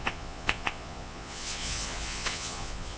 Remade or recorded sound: remade